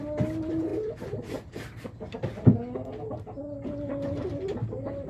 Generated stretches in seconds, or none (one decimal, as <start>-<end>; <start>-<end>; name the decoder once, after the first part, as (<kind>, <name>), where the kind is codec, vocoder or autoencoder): none